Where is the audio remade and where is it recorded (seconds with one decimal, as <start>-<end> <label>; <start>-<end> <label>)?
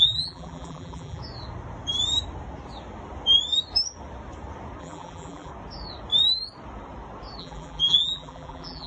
0.0-1.2 remade; 1.2-4.8 recorded; 4.8-5.5 remade; 5.5-7.4 recorded; 7.4-8.9 remade